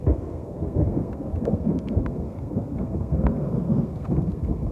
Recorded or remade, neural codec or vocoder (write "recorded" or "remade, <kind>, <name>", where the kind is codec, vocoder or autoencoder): remade, codec, SNAC